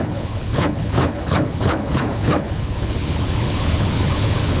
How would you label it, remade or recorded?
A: remade